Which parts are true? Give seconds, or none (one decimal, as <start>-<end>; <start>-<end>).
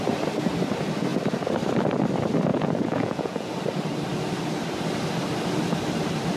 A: 0.0-2.5; 3.5-6.4